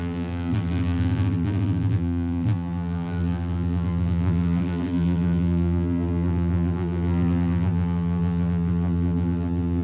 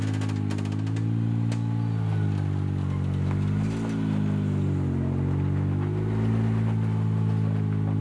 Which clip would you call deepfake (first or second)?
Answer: first